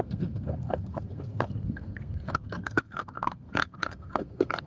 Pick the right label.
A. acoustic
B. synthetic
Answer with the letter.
B